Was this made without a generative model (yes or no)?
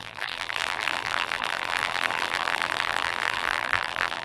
no